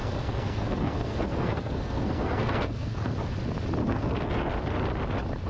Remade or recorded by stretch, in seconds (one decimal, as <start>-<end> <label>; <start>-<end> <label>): 0.0-3.3 remade; 3.3-3.8 recorded; 3.8-4.5 remade; 4.5-5.5 recorded